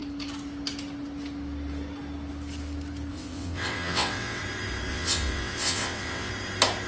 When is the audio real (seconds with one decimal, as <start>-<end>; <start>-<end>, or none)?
0.0-3.1; 4.4-4.9; 6.3-6.9